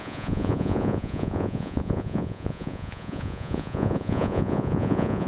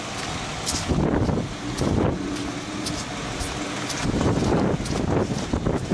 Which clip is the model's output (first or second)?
first